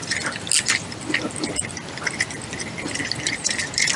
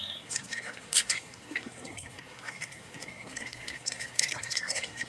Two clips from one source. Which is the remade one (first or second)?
second